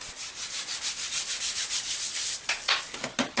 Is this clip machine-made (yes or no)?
no